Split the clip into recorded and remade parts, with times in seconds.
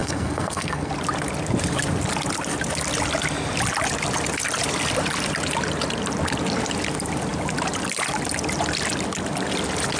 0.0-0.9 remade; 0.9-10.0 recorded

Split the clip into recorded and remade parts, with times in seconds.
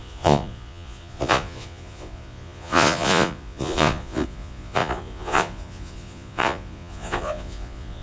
0.0-8.0 remade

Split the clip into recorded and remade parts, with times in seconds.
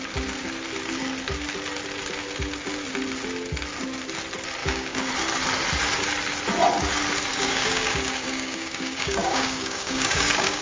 0.0-4.6 recorded; 4.6-5.1 remade; 5.1-7.3 recorded; 7.3-10.6 remade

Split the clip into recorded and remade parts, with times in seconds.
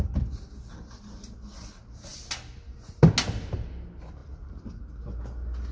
0.0-5.7 recorded